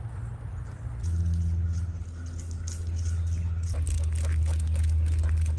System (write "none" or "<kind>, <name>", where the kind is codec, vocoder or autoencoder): none